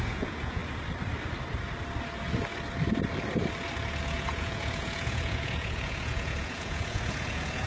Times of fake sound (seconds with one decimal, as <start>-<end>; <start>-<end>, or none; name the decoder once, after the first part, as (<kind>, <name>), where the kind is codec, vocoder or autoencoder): 0.0-0.6 (vocoder, Vocos); 4.0-7.7